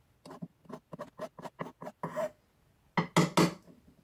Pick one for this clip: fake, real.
real